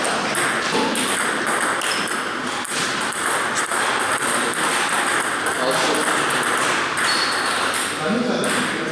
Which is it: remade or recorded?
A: recorded